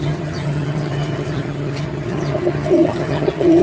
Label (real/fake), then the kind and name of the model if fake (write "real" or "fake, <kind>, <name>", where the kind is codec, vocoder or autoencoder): fake, vocoder, HiFi-GAN